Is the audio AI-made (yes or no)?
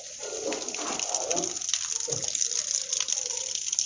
no